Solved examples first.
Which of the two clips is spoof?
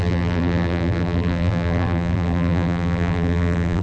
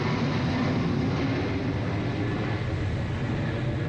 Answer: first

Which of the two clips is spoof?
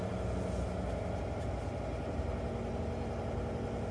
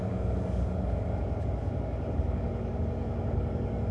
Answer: second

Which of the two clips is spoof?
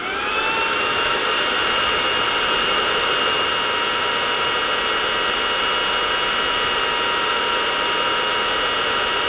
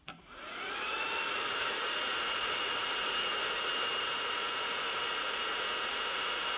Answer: second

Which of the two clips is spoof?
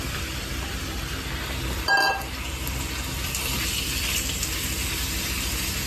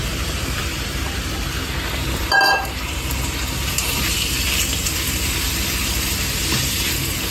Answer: second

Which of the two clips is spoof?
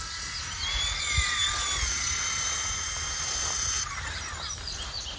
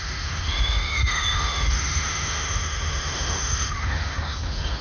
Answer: second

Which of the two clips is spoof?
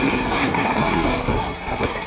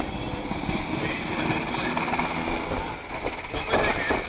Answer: first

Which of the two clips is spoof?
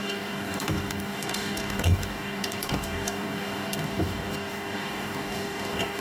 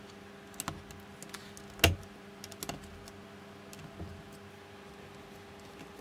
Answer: first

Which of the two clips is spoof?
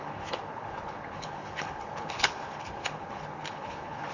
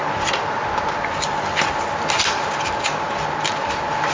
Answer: first